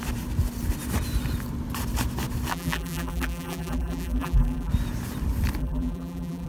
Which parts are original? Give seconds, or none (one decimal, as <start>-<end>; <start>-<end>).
0.0-2.5; 4.7-5.6